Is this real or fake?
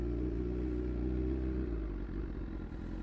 real